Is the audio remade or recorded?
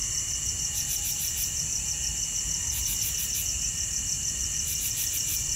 recorded